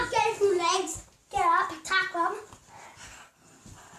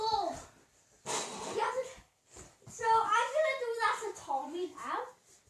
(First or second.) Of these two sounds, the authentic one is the first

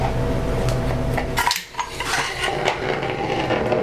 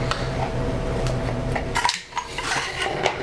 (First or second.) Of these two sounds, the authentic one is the first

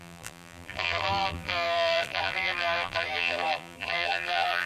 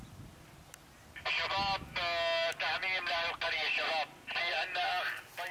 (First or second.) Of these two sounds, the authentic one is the second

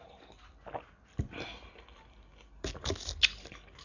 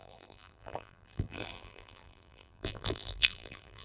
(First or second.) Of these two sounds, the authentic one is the first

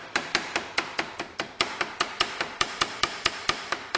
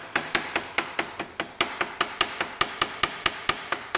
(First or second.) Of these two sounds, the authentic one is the second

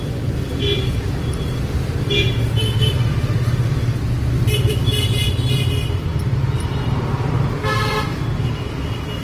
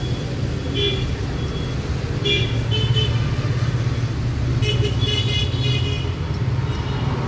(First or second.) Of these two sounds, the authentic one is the second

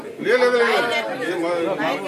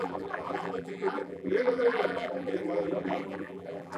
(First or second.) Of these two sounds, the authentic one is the first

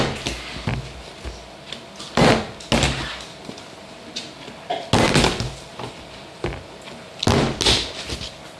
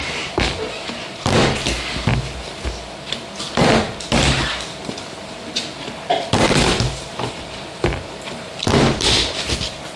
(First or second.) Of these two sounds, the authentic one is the first